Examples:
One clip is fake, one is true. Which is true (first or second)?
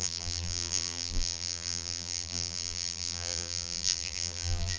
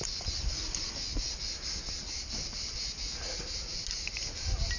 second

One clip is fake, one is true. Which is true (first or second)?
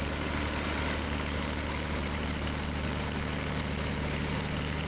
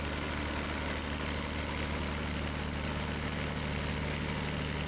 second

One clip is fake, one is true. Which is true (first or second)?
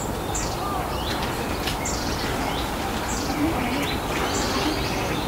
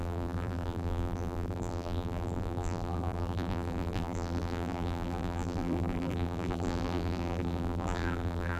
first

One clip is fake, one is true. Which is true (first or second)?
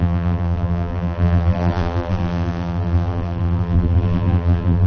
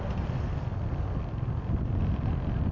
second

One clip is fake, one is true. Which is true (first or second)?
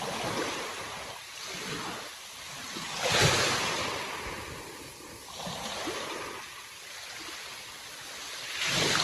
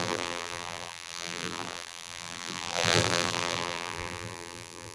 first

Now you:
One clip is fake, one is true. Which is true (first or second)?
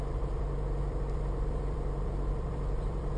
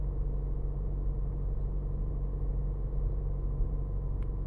second